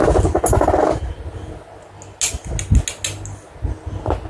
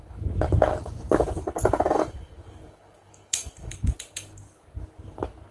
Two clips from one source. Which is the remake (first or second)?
second